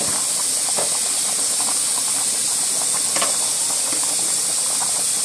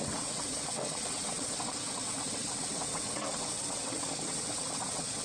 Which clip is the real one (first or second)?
first